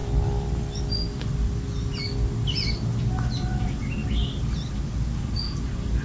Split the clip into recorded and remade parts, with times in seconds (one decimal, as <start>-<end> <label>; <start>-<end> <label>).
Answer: 0.0-6.0 recorded